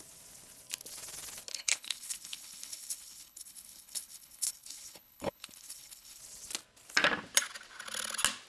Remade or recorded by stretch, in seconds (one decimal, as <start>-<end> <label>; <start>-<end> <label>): 0.0-1.5 recorded; 1.5-6.2 remade; 6.2-8.5 recorded

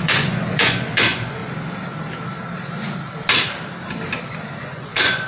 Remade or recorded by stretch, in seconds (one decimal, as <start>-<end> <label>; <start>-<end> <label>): 0.0-1.4 remade; 1.4-4.6 recorded; 4.6-5.3 remade

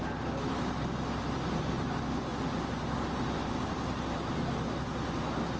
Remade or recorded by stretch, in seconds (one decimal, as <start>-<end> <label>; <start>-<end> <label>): 0.0-5.6 recorded

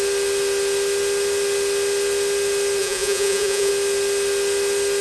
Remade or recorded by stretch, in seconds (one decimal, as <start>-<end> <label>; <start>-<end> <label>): 0.0-2.8 recorded; 2.8-3.7 remade; 3.7-5.0 recorded

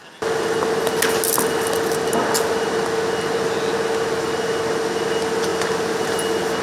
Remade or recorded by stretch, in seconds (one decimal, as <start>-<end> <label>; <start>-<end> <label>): 0.0-6.6 recorded

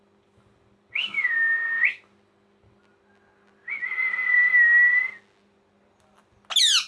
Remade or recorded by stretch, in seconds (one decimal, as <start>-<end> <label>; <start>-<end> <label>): 0.0-6.9 recorded

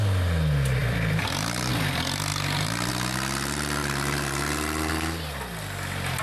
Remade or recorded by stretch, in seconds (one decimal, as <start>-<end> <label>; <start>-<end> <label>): 0.0-0.8 recorded; 0.8-1.7 remade; 1.7-2.3 recorded; 2.3-2.9 remade; 2.9-6.2 recorded

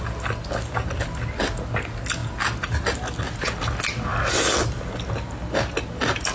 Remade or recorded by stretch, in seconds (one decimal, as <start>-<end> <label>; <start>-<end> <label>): 0.0-6.3 recorded